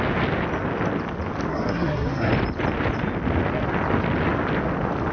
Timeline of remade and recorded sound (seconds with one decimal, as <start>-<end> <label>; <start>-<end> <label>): 0.0-1.5 recorded; 1.5-2.3 remade; 2.3-5.1 recorded